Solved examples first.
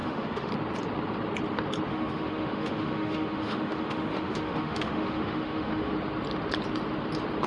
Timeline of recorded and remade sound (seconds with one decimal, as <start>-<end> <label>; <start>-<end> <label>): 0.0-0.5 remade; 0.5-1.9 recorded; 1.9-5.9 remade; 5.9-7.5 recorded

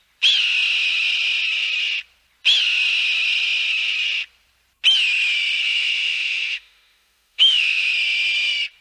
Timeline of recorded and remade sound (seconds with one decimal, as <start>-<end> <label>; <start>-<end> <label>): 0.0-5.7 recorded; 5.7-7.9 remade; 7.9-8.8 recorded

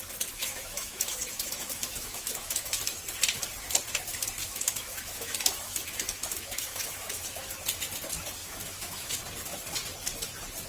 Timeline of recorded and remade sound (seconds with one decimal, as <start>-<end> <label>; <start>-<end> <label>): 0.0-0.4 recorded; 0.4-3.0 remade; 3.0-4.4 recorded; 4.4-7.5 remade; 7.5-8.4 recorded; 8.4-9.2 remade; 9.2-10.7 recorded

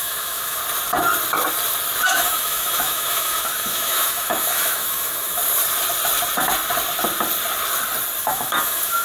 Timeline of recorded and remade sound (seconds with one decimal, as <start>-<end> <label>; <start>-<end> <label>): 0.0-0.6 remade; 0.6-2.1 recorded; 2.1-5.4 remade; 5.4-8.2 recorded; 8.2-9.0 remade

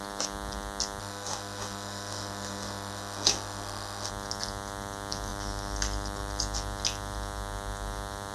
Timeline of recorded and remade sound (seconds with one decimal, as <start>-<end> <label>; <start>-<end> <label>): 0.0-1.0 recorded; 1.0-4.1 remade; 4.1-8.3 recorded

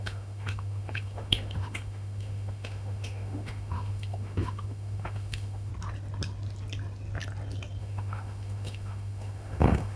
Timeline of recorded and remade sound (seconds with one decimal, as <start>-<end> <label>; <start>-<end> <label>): 0.0-5.7 remade; 5.7-7.8 recorded; 7.8-10.0 remade